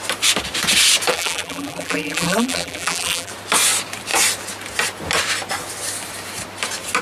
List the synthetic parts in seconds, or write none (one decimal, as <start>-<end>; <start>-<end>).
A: 1.1-3.3